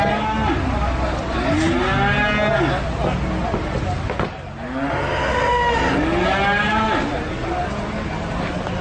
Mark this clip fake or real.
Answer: real